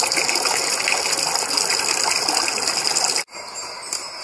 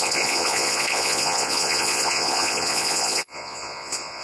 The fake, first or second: second